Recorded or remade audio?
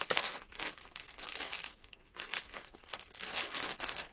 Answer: remade